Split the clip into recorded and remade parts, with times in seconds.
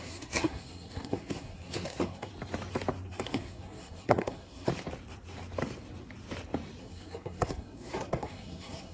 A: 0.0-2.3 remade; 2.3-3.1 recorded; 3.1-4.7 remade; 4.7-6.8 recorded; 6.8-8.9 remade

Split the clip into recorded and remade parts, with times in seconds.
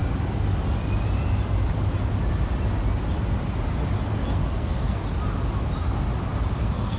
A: 0.0-4.2 recorded; 4.2-5.0 remade; 5.0-6.6 recorded; 6.6-7.0 remade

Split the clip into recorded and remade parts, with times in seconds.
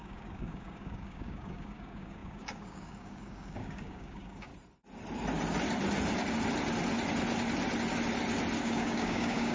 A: 0.0-4.5 remade; 4.5-8.6 recorded; 8.6-9.5 remade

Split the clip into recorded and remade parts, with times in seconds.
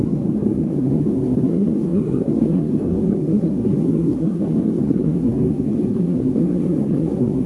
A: 0.0-7.5 remade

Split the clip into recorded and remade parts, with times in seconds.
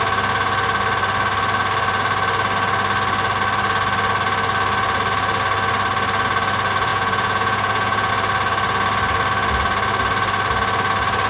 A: 0.0-6.9 recorded; 6.9-8.1 remade; 8.1-11.3 recorded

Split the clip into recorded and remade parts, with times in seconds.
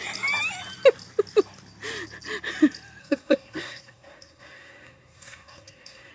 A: 0.0-3.0 recorded; 3.0-6.1 remade